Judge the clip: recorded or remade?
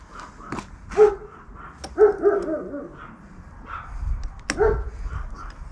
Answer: recorded